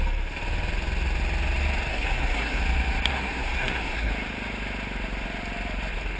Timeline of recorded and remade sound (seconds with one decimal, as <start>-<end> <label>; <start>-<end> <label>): 0.0-1.9 recorded; 1.9-2.6 remade; 2.6-3.1 recorded; 3.1-4.1 remade; 4.1-6.2 recorded